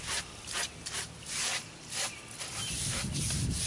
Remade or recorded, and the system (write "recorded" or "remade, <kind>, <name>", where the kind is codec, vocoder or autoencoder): recorded